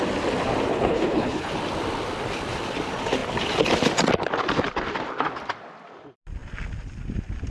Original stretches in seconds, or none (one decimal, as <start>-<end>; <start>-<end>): 0.0-0.7; 1.5-7.5